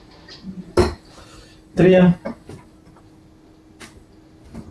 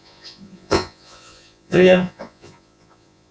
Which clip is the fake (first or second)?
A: second